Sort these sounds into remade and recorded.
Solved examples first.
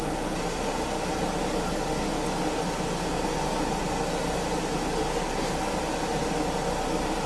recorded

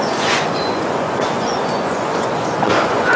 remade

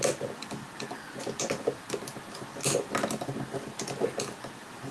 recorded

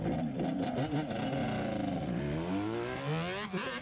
recorded